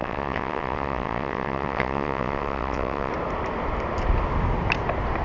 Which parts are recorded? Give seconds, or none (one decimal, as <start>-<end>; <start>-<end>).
3.1-5.2